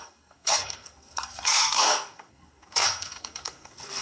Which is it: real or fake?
fake